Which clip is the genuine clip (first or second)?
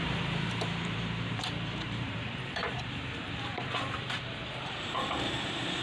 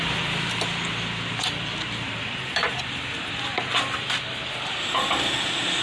second